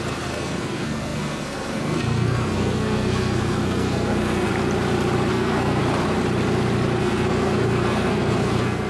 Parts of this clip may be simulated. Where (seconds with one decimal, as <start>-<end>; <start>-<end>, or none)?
0.0-4.5; 5.3-5.8; 7.0-8.9